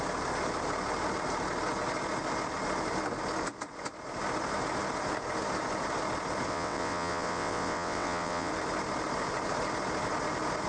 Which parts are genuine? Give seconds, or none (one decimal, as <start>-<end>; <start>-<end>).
0.0-6.5; 8.5-10.7